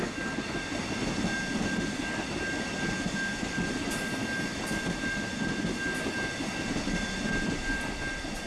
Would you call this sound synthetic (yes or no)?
no